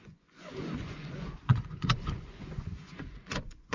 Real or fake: fake